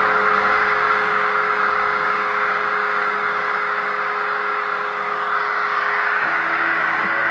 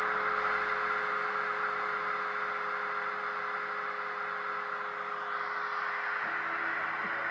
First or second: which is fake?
first